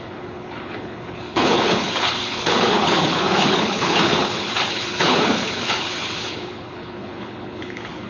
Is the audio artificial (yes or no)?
yes